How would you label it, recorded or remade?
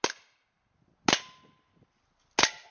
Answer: recorded